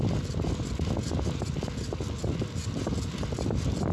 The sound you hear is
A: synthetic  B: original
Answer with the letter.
B